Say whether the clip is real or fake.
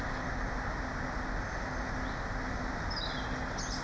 real